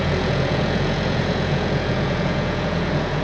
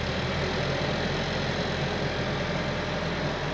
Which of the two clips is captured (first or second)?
second